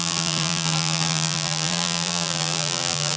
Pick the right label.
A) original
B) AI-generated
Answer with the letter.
B